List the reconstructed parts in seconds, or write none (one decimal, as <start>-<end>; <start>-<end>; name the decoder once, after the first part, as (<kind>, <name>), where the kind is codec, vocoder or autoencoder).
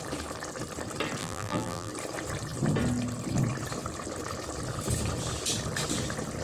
1.2-1.9 (vocoder, BigVGAN v2)